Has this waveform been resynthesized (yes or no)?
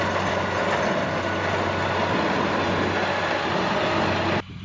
no